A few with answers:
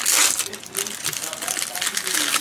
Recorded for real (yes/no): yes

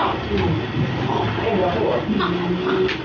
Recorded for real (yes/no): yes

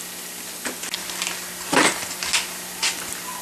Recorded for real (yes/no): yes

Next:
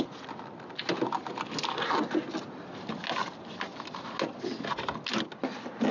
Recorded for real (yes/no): yes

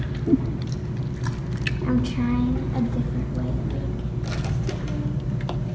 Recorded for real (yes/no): yes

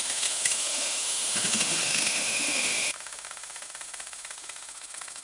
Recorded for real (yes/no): no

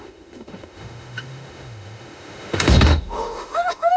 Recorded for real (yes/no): no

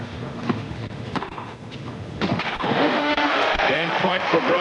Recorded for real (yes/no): no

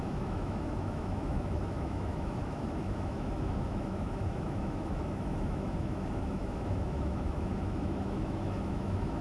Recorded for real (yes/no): no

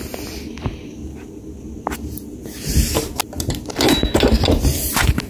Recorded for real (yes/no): yes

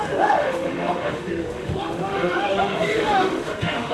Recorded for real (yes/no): no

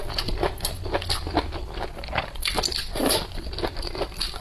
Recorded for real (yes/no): yes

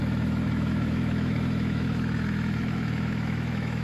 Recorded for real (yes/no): no